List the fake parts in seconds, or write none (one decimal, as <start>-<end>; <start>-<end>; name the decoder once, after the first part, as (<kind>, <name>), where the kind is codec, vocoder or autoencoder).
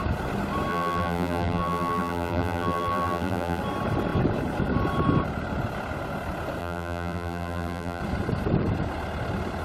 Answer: 0.7-3.6 (vocoder, BigVGAN v2); 6.6-8.0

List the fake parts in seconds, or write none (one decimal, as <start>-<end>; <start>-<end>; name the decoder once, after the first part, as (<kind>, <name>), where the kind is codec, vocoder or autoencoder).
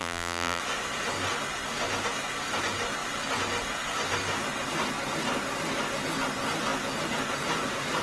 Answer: 0.0-0.6 (vocoder, BigVGAN v2)